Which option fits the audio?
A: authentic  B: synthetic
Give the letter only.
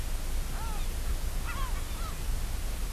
A